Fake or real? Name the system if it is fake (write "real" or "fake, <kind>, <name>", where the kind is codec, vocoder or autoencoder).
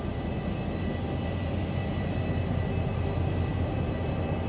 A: real